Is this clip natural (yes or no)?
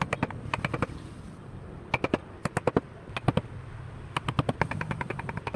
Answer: yes